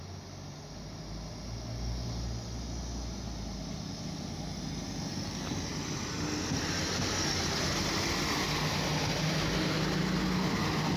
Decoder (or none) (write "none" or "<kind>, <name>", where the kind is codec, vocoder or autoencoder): none